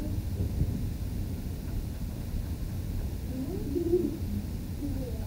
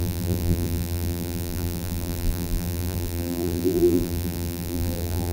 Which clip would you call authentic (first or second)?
first